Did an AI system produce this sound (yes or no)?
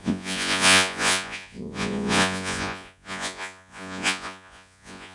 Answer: yes